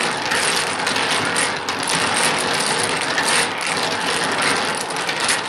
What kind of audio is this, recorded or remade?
recorded